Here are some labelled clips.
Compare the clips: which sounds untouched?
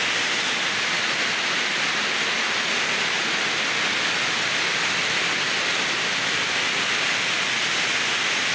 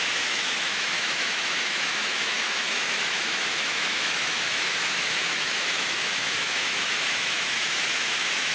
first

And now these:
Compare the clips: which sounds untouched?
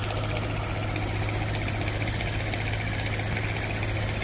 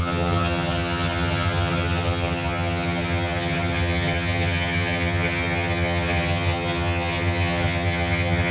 first